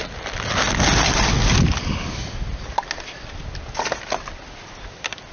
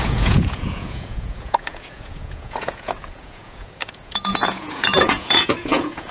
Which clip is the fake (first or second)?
second